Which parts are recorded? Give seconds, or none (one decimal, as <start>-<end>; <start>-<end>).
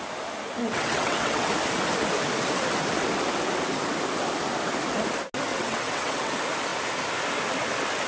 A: 0.0-0.6; 1.5-5.5; 6.3-8.1